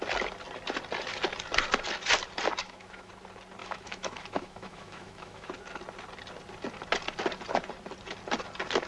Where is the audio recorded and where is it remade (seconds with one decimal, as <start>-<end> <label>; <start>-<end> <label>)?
0.0-2.6 recorded; 2.6-3.1 remade; 3.1-3.6 recorded; 3.6-5.5 remade; 5.5-8.9 recorded